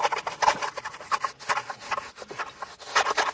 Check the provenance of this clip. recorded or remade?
recorded